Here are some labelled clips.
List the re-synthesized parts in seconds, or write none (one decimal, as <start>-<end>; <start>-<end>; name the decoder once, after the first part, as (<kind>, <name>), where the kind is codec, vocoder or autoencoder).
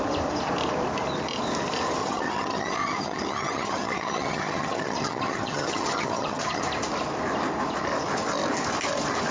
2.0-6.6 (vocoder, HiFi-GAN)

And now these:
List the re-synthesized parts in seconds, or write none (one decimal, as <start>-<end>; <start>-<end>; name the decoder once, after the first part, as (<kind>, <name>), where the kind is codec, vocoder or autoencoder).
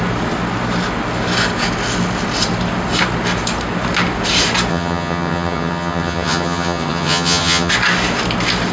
4.7-7.7 (vocoder, HiFi-GAN)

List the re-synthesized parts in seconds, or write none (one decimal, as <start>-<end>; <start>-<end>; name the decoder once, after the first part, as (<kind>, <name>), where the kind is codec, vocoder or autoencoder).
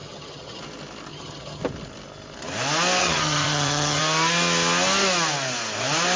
0.0-0.6 (vocoder, HiFi-GAN); 1.1-1.6; 3.0-4.0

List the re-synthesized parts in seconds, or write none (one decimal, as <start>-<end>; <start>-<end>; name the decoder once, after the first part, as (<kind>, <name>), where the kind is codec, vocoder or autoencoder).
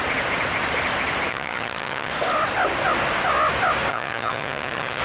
1.3-2.1 (vocoder, HiFi-GAN); 3.9-5.0